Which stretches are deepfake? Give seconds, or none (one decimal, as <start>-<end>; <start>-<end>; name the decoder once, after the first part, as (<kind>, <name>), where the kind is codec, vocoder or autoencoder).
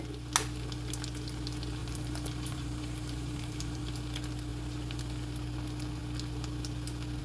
1.8-3.8 (vocoder, BigVGAN v2)